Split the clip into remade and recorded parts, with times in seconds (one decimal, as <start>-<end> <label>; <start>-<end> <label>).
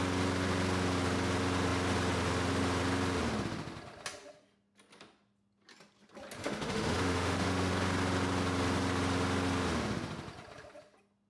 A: 0.0-6.4 recorded; 6.4-7.7 remade; 7.7-11.3 recorded